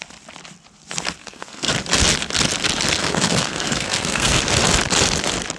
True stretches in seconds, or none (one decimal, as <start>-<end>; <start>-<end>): 0.0-1.2; 1.7-3.0; 4.4-5.6